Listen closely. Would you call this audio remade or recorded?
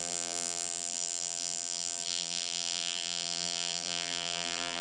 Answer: remade